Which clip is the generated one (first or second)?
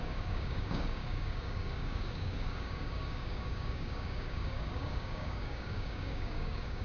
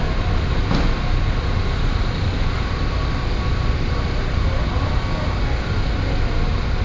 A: first